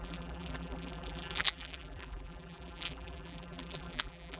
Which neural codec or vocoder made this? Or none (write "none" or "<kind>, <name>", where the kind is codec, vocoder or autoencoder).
vocoder, BigVGAN v2